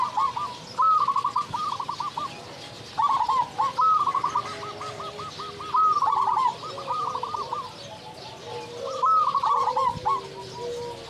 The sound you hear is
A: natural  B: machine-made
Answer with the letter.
A